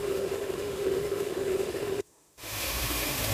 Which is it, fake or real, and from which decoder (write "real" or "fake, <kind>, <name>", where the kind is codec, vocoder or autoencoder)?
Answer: fake, autoencoder, DAC-VAE